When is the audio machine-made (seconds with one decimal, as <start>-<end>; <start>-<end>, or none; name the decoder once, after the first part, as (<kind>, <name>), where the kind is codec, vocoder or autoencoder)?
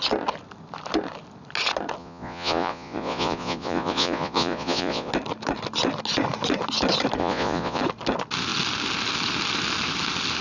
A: 2.0-5.1 (vocoder, Vocos); 7.2-7.8